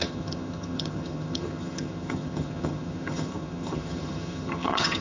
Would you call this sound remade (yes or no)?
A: yes